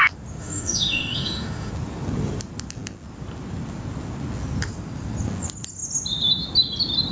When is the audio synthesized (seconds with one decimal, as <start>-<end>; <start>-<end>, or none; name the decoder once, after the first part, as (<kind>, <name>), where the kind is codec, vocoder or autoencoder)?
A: 0.4-1.7 (autoencoder, DAC-VAE)